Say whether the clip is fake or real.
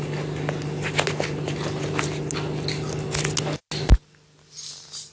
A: real